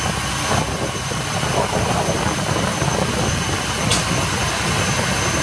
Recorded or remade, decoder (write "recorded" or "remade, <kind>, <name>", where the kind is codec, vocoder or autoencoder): recorded